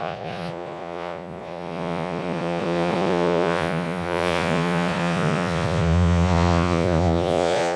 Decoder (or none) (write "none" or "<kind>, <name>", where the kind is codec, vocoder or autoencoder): vocoder, Vocos